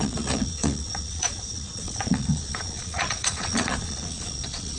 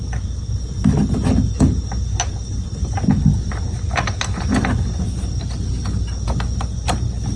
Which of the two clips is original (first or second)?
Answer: second